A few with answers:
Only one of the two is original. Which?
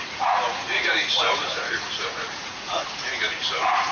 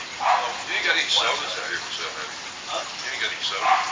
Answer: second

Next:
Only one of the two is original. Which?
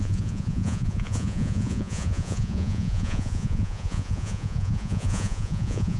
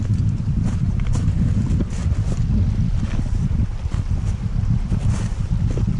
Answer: second